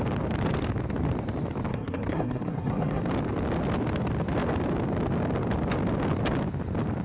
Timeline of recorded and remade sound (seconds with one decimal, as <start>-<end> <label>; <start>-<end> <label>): 0.0-1.7 recorded; 1.7-3.0 remade; 3.0-7.0 recorded